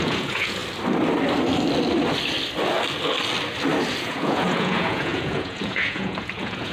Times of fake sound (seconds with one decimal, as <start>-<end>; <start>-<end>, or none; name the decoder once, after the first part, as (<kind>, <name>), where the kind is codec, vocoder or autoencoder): 0.0-0.6 (vocoder, Vocos); 4.0-6.7